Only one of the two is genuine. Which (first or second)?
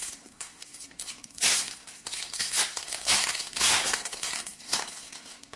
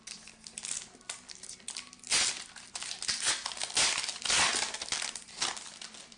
second